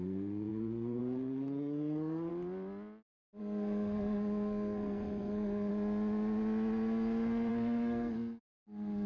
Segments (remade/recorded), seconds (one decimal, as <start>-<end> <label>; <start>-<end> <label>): 0.0-2.3 remade; 2.3-3.4 recorded; 3.4-5.7 remade; 5.7-7.5 recorded; 7.5-9.1 remade